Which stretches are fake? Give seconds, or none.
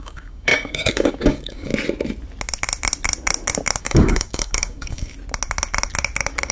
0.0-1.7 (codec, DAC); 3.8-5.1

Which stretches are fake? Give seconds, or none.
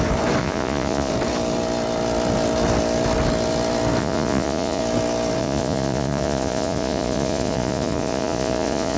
0.4-1.1 (vocoder, Vocos); 4.0-4.8; 5.4-9.0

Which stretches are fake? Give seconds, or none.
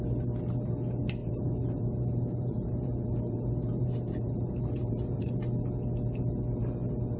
1.2-5.2 (vocoder, BigVGAN v2)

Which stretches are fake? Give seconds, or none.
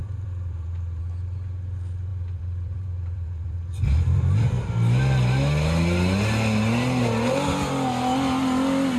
0.0-1.0 (vocoder, BigVGAN v2); 2.1-4.7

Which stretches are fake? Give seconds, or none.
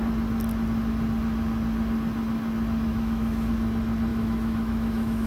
2.9-3.5 (autoencoder, DAC-VAE); 4.1-5.3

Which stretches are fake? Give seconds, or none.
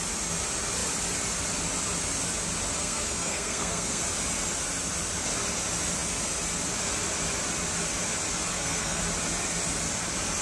2.8-4.0 (codec, SNAC); 8.5-9.0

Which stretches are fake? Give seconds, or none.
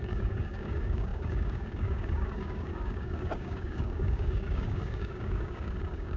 0.0-6.2 (codec, DAC)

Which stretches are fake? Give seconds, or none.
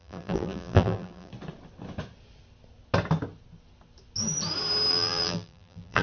0.0-1.3 (vocoder, BigVGAN v2); 4.9-6.0